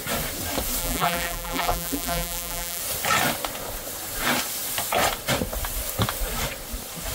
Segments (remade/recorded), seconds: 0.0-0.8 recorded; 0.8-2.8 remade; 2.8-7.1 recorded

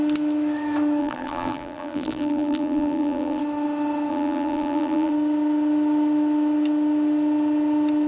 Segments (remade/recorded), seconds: 0.0-1.0 recorded; 1.0-3.4 remade; 3.4-4.1 recorded; 4.1-5.1 remade; 5.1-8.1 recorded

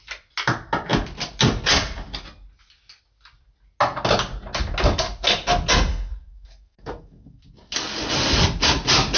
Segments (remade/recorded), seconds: 0.0-5.9 recorded; 5.9-7.4 remade; 7.4-9.2 recorded

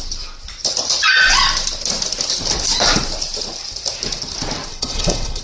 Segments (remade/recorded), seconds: 0.0-4.7 recorded; 4.7-5.4 remade

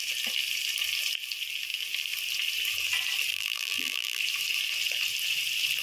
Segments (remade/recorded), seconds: 0.0-3.3 recorded; 3.3-4.2 remade; 4.2-5.8 recorded

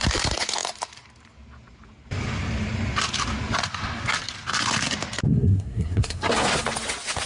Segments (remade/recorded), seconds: 0.0-5.3 recorded; 5.3-6.3 remade; 6.3-7.3 recorded

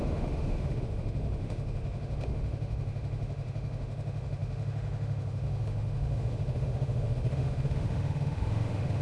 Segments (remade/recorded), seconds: 0.0-9.0 remade

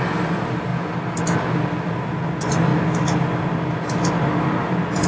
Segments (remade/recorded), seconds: 0.0-5.1 recorded